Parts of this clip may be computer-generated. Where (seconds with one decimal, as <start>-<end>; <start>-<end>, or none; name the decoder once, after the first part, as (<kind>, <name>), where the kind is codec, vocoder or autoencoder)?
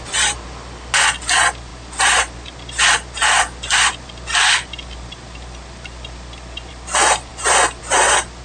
none